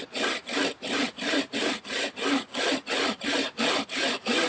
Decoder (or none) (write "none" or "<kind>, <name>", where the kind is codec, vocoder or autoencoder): none